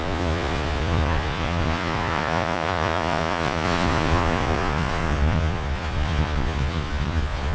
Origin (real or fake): fake